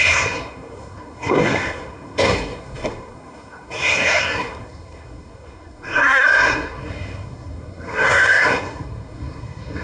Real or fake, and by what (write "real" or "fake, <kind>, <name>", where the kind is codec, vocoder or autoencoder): fake, codec, SNAC